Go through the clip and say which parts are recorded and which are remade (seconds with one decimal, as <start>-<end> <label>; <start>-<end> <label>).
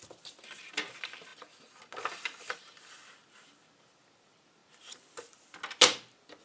0.0-6.4 recorded